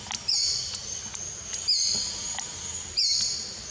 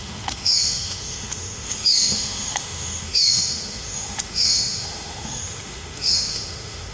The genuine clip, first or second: first